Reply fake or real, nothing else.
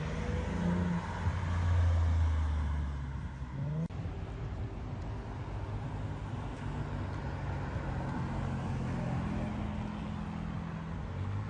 real